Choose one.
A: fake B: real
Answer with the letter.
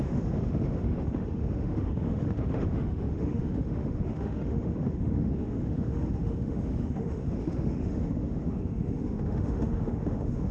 A